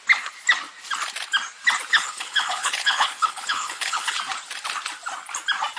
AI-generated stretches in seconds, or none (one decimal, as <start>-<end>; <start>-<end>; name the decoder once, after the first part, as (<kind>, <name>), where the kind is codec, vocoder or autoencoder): 1.9-4.2 (codec, HILCodec)